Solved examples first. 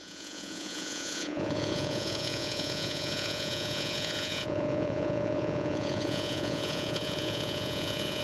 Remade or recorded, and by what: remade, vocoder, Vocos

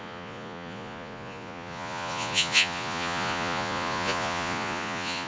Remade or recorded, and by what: remade, vocoder, Vocos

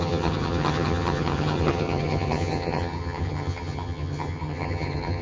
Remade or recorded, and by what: remade, vocoder, HiFi-GAN